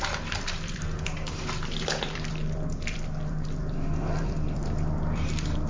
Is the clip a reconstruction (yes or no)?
yes